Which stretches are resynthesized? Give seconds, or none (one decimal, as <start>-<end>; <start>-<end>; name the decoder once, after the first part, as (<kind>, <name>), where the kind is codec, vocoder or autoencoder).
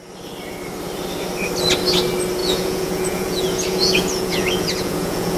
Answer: 2.4-5.4 (vocoder, Vocos)